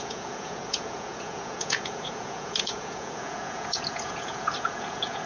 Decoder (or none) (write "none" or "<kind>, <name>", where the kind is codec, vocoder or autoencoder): vocoder, Vocos